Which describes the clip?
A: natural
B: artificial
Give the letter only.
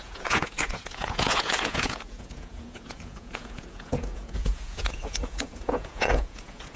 B